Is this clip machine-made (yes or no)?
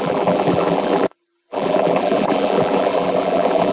yes